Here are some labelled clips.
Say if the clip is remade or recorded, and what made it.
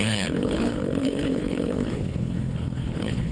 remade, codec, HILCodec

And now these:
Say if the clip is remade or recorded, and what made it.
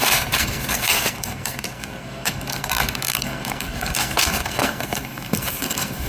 remade, codec, SNAC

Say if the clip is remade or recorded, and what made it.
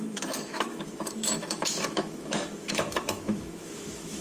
remade, autoencoder, DAC-VAE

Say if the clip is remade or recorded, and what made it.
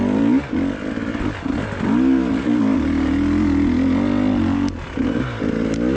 recorded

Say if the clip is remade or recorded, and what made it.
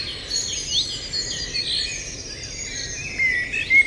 recorded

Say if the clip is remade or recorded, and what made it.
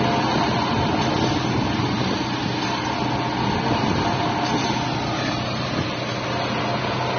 recorded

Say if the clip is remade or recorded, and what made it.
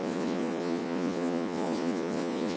remade, vocoder, Vocos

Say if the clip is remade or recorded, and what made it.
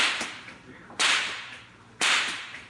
remade, vocoder, BigVGAN v2